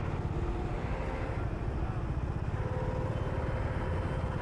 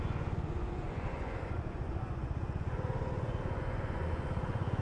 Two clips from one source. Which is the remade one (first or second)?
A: second